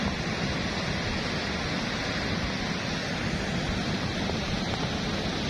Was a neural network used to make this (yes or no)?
no